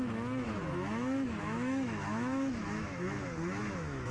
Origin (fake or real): fake